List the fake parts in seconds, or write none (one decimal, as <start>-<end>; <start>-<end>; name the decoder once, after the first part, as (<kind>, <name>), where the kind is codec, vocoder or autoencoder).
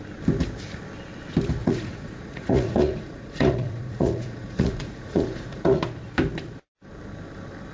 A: 1.6-5.8 (vocoder, Vocos)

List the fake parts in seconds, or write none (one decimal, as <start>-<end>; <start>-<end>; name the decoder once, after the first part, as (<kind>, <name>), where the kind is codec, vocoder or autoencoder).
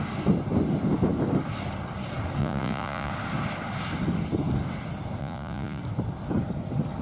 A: 2.4-3.1 (vocoder, Vocos); 5.2-5.8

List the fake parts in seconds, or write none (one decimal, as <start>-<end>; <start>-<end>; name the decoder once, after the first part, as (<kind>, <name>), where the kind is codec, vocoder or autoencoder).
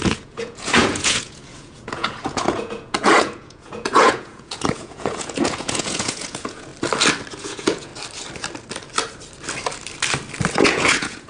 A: 0.0-6.7 (vocoder, Vocos); 7.3-7.9; 10.5-11.3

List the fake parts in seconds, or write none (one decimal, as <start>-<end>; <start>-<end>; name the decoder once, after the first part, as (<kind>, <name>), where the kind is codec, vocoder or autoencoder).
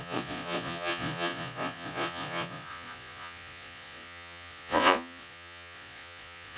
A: 0.0-6.6 (vocoder, Vocos)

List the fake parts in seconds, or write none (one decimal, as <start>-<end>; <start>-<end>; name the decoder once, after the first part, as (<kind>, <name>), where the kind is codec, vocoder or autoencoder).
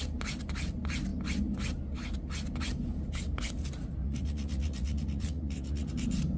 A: 4.0-5.9 (vocoder, Vocos)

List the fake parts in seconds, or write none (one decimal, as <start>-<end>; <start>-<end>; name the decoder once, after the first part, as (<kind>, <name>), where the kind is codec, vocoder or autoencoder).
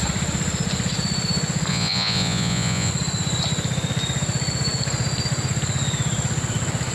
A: 1.7-2.9 (vocoder, Vocos)